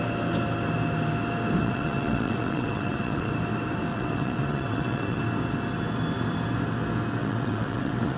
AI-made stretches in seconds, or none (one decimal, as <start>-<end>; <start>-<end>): 1.6-3.3; 3.9-5.2; 7.2-8.2